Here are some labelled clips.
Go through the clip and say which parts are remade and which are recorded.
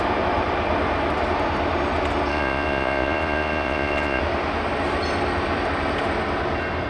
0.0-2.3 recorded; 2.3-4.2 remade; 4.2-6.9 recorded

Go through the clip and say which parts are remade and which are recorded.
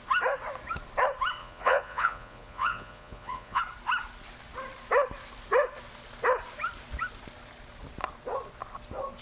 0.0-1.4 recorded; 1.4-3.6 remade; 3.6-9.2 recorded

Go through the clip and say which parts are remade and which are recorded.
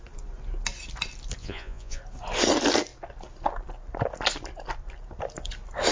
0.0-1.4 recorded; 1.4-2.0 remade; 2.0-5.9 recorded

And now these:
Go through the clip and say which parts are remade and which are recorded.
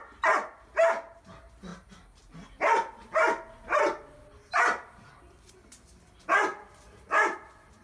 0.0-7.8 recorded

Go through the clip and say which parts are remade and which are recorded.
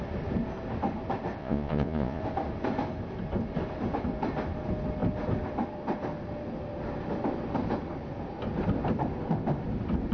0.0-1.4 recorded; 1.4-2.2 remade; 2.2-10.1 recorded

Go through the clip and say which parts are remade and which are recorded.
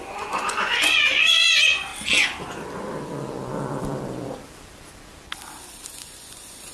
0.0-1.9 remade; 1.9-5.9 recorded; 5.9-6.7 remade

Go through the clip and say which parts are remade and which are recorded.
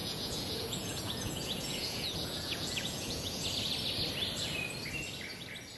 0.0-3.5 remade; 3.5-5.8 recorded